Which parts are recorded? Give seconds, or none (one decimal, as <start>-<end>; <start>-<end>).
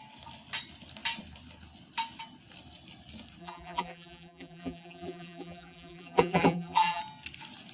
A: 0.0-3.4; 7.0-7.7